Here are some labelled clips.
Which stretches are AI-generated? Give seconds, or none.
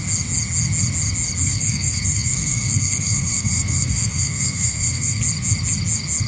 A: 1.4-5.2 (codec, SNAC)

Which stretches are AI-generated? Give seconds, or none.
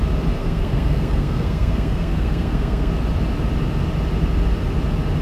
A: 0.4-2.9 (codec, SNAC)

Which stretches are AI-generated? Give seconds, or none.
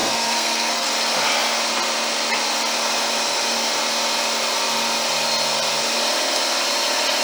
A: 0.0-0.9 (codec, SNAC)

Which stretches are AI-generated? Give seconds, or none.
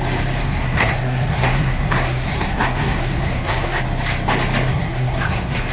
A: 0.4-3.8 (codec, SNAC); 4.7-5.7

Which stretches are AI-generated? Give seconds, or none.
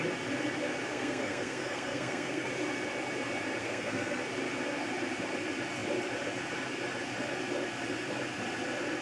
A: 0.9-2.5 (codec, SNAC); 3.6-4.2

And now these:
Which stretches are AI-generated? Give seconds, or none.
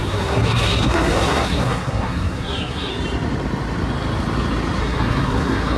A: 0.0-2.9 (codec, SNAC); 4.8-5.8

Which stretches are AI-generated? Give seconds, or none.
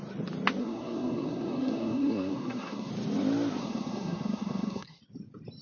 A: 0.6-2.9 (codec, SNAC); 3.6-5.0